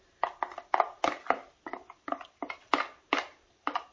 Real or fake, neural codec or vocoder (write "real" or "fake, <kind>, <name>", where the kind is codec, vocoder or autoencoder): real